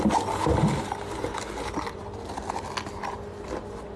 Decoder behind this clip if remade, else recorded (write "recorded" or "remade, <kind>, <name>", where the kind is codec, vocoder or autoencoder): recorded